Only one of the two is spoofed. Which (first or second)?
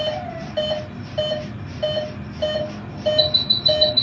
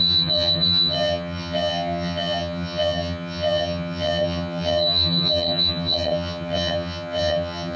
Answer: second